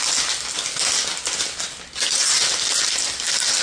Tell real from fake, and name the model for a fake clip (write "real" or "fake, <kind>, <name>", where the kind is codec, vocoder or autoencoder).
real